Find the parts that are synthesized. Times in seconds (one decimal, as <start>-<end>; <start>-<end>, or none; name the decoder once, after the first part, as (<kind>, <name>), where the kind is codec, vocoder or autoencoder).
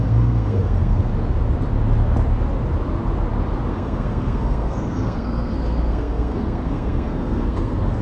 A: 0.0-1.1 (codec, SNAC); 3.7-8.0